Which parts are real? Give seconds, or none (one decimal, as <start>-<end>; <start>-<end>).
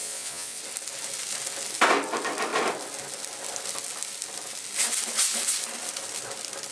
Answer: 0.6-6.7